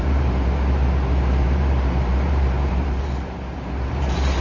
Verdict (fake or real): fake